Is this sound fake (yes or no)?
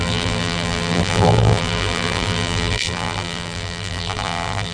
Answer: yes